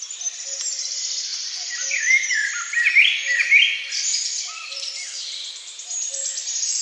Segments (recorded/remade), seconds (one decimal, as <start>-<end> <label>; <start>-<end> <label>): 0.0-1.3 recorded; 1.3-2.9 remade; 2.9-4.1 recorded; 4.1-4.9 remade; 4.9-6.8 recorded